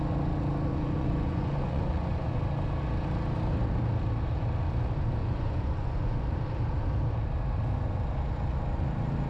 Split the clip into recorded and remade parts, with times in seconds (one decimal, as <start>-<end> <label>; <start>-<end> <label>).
0.0-0.7 recorded; 0.7-2.4 remade; 2.4-5.2 recorded; 5.2-6.2 remade; 6.2-9.3 recorded